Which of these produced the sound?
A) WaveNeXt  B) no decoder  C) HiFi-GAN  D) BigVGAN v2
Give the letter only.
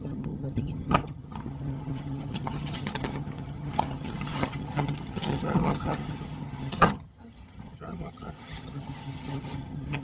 C